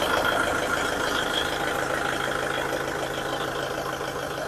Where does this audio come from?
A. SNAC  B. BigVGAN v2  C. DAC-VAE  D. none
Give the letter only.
D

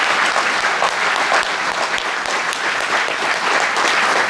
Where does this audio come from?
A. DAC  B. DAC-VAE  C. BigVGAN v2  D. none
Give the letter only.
D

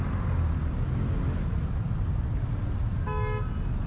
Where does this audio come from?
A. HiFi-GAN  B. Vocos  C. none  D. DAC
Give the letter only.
C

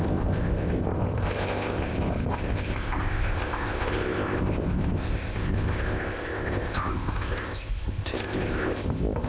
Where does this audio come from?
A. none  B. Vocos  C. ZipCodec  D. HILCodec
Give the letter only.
C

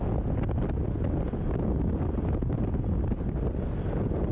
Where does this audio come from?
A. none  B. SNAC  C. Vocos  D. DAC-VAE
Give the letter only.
A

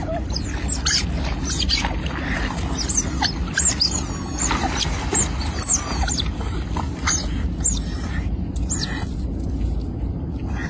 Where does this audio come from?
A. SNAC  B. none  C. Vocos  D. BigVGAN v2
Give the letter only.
B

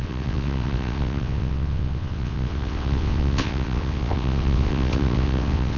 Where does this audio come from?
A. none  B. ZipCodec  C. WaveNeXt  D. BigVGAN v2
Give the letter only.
C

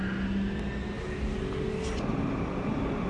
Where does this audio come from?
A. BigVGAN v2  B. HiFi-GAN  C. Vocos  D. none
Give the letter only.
D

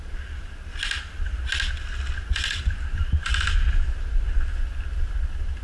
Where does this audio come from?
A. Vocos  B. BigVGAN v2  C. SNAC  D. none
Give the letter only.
D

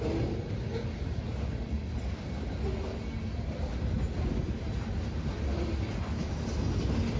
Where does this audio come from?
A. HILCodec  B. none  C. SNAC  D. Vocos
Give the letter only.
B